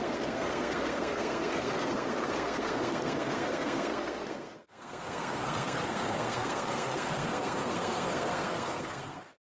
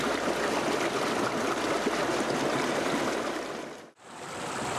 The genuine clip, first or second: second